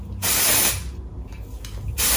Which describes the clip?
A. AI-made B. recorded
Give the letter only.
B